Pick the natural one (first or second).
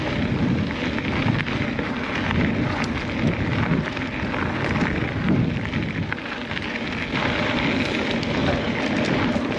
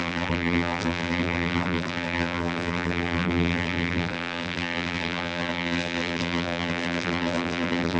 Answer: first